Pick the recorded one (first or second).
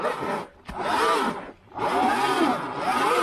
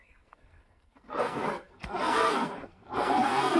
first